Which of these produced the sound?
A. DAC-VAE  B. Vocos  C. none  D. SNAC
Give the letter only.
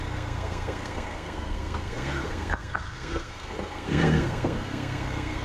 D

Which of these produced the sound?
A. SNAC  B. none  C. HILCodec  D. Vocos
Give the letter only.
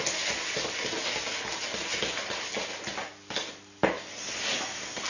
B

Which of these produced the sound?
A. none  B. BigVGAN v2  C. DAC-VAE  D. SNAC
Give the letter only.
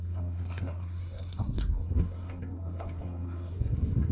D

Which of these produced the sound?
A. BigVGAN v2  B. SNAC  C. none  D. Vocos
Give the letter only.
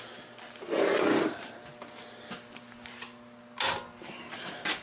C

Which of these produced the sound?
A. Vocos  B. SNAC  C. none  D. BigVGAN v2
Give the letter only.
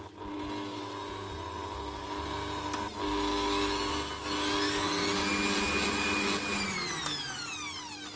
C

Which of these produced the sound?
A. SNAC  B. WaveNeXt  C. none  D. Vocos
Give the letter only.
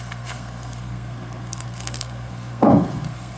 A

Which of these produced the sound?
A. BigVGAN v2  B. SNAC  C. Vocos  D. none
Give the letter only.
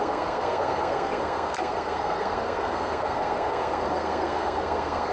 B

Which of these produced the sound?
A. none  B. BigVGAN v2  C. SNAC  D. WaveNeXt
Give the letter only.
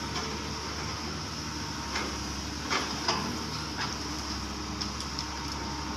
A